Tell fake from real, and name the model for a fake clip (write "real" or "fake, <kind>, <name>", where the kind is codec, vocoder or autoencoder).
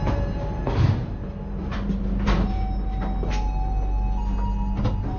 real